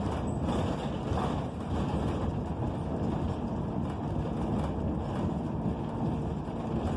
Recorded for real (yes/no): yes